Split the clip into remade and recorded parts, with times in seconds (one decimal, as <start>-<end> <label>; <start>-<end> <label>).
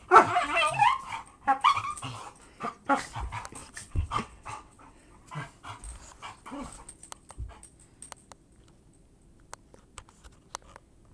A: 0.0-3.6 recorded; 3.6-5.2 remade; 5.2-11.1 recorded